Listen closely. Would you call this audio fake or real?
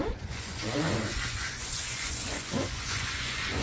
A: fake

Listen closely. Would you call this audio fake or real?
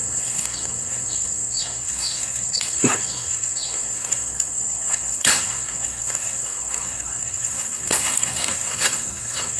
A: fake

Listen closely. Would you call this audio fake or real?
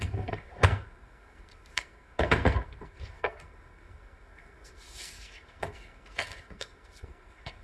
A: fake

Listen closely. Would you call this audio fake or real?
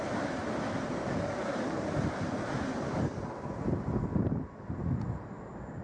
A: real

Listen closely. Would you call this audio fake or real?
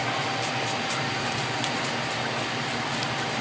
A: real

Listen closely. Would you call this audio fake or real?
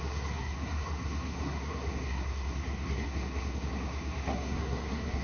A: fake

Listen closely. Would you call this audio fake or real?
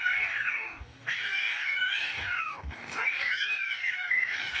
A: fake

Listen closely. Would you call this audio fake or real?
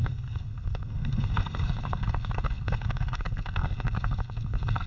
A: fake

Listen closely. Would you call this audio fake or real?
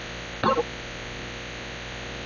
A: real